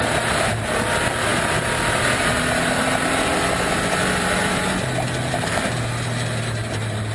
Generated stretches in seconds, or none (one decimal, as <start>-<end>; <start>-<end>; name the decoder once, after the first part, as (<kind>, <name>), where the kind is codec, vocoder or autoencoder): none